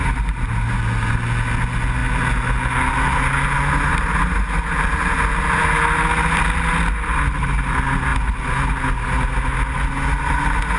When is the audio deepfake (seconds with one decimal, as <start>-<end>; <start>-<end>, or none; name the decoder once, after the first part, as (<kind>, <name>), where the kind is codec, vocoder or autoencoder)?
none